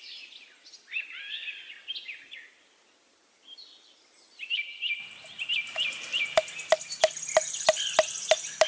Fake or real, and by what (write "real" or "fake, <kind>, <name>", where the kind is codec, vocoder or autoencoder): real